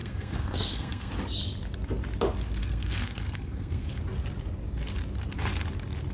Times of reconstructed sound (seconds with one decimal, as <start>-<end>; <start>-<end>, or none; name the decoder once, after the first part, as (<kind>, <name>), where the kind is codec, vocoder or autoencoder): 0.0-1.1 (codec, SNAC); 2.6-4.0